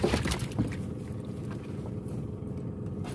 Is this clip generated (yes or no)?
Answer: no